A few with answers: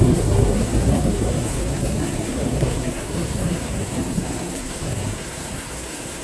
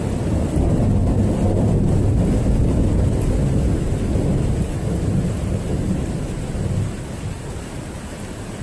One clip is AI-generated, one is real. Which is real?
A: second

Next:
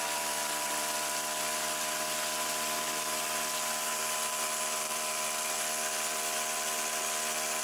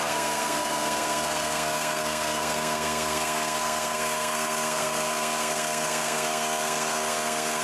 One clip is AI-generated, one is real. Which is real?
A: first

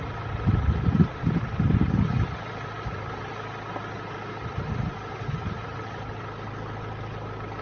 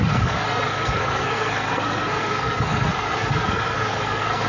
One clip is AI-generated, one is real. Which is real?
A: first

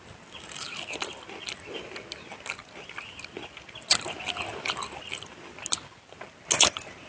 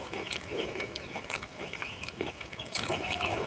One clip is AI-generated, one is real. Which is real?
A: first